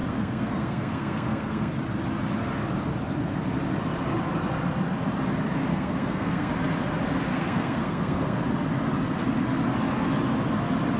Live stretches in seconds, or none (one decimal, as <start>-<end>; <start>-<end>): 1.7-5.7; 6.5-7.3; 8.4-11.0

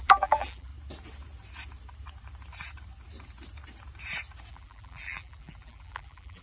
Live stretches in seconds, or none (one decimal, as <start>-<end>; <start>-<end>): 0.7-4.5

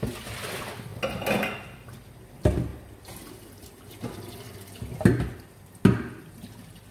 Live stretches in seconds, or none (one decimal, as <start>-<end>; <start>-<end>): 0.0-6.9

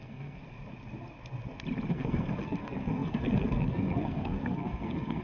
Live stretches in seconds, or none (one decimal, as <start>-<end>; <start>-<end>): 0.4-1.9

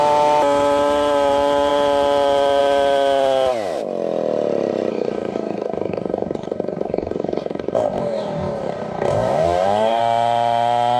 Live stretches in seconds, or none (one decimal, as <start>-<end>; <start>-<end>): 0.0-4.9; 10.0-11.0

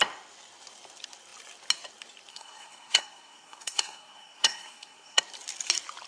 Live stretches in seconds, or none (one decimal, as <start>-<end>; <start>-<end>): 0.0-2.3; 5.2-6.1